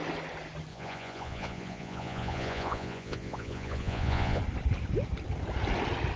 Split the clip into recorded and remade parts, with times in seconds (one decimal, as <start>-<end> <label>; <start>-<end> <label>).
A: 0.0-0.7 recorded; 0.7-4.4 remade; 4.4-6.2 recorded